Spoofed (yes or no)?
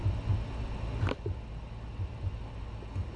no